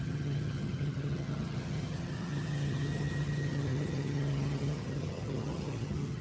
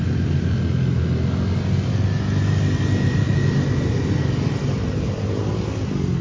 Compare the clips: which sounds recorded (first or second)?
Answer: second